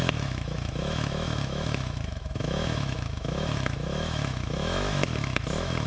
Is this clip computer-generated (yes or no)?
yes